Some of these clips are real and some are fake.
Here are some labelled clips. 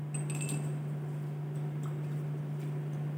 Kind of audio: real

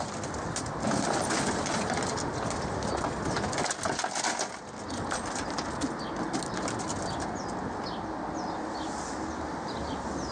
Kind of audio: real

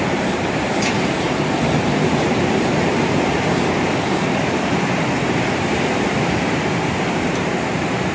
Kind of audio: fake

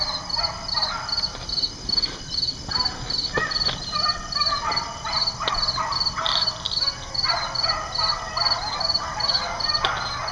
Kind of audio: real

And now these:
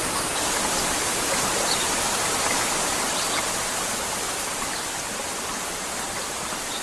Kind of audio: real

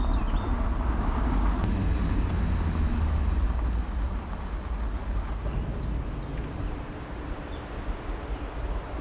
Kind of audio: real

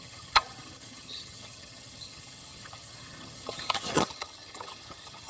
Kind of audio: fake